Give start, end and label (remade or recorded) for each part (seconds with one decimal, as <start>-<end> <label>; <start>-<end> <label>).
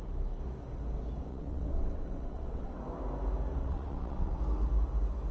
0.0-1.3 recorded; 1.3-2.8 remade; 2.8-3.6 recorded; 3.6-4.4 remade; 4.4-5.3 recorded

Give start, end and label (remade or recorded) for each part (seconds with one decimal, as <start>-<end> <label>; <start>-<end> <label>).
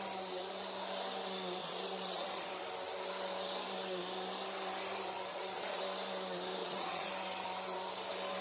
0.0-1.6 recorded; 1.6-2.5 remade; 2.5-5.3 recorded; 5.3-5.8 remade; 5.8-6.6 recorded; 6.6-7.1 remade; 7.1-8.4 recorded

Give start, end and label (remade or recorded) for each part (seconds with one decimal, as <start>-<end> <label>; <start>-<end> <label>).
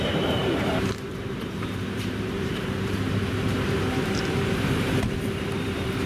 0.0-6.1 remade